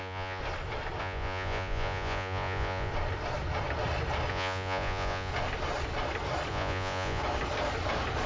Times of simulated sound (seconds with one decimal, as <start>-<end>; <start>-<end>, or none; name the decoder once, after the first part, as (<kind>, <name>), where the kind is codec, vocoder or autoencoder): 0.0-0.4 (vocoder, Vocos); 1.0-2.9; 4.3-5.3; 6.5-7.2